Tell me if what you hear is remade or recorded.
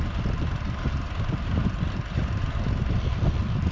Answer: recorded